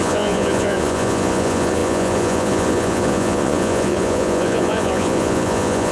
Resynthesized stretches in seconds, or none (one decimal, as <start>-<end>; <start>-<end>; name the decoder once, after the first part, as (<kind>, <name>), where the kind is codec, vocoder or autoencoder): 0.0-5.9 (vocoder, Vocos)